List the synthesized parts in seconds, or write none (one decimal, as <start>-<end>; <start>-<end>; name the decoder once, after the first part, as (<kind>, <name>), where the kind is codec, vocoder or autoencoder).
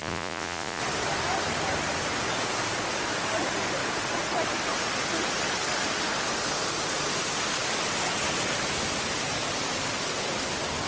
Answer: 0.0-0.8 (vocoder, Vocos)